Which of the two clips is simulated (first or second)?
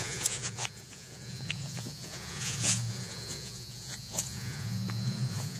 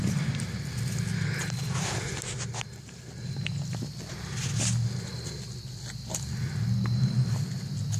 first